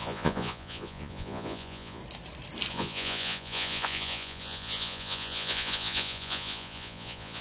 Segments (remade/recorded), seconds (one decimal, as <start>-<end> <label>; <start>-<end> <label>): 0.0-2.0 remade; 2.0-2.7 recorded; 2.7-7.4 remade